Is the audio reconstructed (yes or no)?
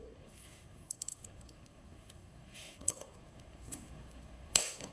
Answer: yes